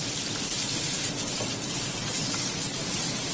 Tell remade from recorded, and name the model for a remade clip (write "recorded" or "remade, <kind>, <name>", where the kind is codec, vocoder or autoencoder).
recorded